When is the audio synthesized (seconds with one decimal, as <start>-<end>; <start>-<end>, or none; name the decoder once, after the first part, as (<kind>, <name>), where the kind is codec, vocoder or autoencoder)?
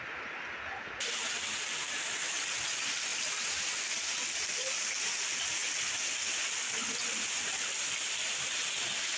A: 3.1-3.7 (vocoder, BigVGAN v2); 5.6-6.2